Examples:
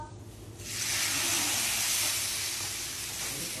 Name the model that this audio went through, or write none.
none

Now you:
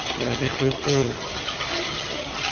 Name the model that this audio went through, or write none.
vocoder, HiFi-GAN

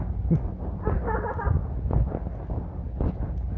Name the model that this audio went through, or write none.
none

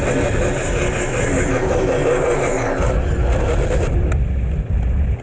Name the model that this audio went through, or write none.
none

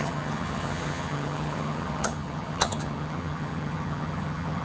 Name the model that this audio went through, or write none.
vocoder, HiFi-GAN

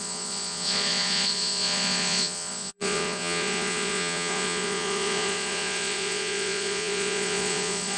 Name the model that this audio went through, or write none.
vocoder, Vocos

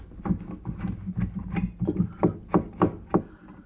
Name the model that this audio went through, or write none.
none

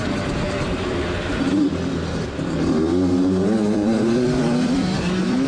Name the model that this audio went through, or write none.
vocoder, BigVGAN v2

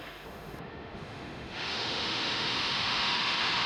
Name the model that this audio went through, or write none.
autoencoder, DAC-VAE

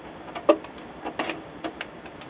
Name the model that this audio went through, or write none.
none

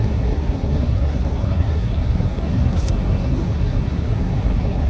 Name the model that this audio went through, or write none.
codec, SNAC